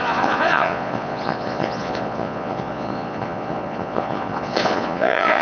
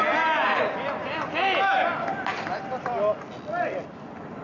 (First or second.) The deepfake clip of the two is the first